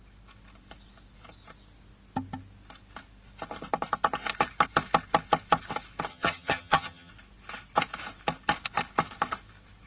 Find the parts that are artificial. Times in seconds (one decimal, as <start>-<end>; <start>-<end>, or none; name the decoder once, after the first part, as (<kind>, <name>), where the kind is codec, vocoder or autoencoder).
6.1-7.1 (vocoder, HiFi-GAN)